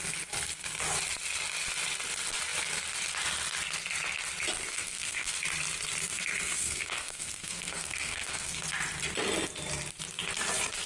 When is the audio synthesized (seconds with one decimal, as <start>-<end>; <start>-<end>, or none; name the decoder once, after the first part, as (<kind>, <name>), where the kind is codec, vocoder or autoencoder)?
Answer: 4.7-5.3 (codec, SNAC); 6.1-8.6